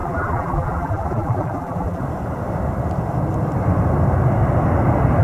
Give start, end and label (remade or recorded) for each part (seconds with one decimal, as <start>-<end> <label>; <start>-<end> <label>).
0.0-2.0 remade; 2.0-5.2 recorded